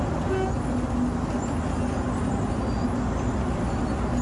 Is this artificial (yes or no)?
no